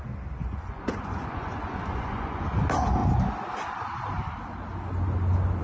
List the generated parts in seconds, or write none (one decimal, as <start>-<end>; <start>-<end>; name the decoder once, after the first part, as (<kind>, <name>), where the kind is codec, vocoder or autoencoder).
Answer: 0.4-2.4 (vocoder, Vocos)